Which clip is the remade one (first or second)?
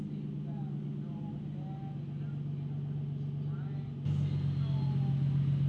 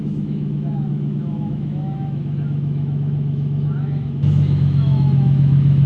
second